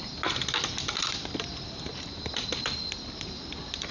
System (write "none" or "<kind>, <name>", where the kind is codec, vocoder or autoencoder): none